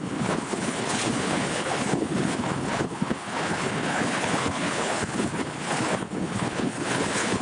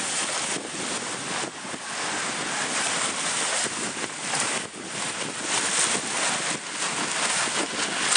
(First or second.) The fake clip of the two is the first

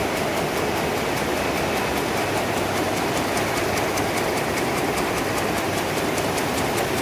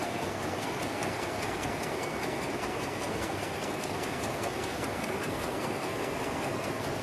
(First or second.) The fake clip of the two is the second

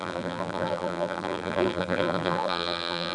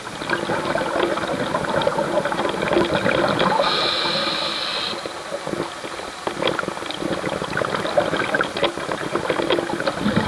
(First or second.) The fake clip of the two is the first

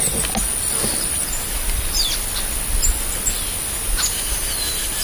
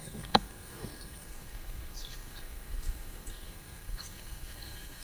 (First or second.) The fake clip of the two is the second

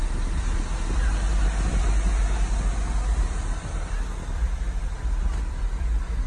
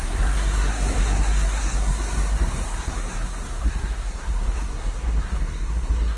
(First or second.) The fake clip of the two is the second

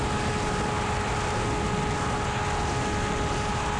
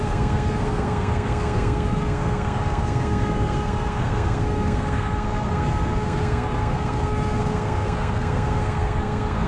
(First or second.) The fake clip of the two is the second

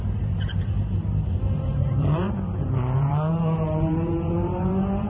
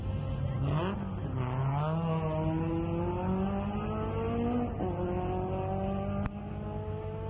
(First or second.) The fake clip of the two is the first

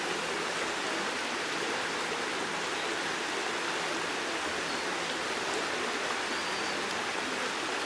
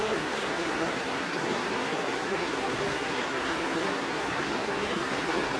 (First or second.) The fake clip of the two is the second